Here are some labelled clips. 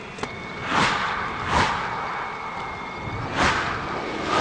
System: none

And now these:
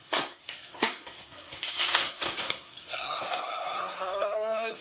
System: codec, SNAC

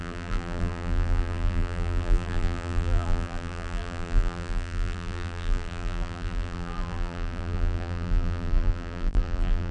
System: vocoder, BigVGAN v2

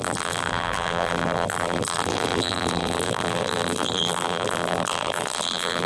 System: vocoder, BigVGAN v2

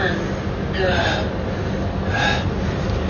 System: none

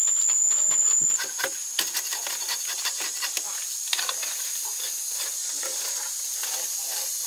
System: none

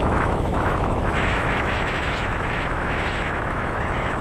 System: autoencoder, DAC-VAE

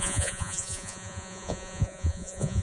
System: vocoder, Vocos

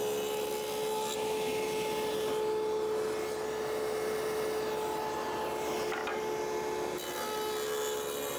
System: none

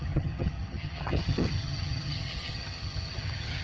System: vocoder, HiFi-GAN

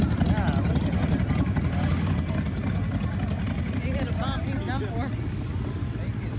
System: none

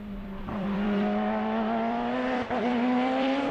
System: vocoder, BigVGAN v2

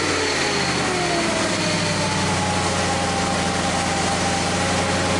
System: none